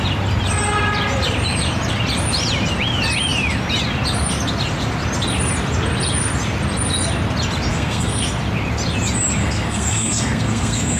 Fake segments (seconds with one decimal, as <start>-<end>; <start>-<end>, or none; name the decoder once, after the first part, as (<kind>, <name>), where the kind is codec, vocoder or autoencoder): 7.7-8.2 (codec, SNAC); 9.4-11.0